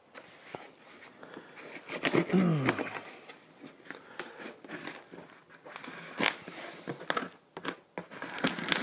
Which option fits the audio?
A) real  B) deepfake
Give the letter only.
A